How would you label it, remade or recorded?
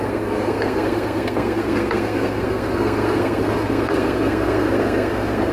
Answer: remade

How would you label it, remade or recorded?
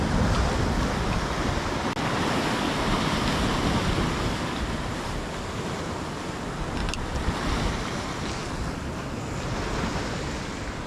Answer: recorded